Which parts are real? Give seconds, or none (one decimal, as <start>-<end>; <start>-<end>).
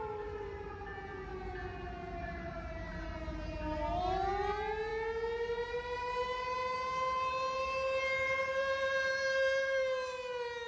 0.9-2.2; 4.9-5.7